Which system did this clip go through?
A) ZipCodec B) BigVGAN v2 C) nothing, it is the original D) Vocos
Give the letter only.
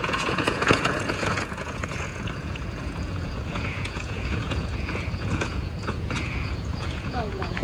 D